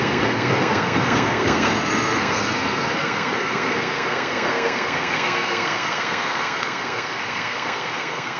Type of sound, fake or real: fake